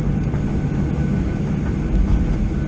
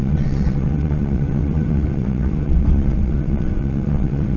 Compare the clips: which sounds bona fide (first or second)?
first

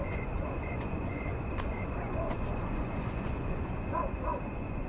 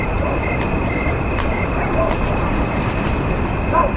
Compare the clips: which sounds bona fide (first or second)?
second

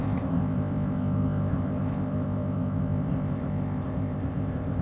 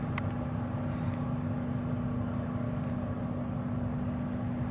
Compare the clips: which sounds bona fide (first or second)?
second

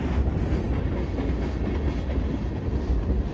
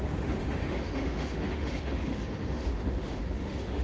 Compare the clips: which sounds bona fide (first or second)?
first